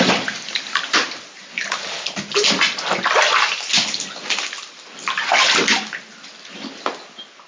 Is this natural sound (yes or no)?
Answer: yes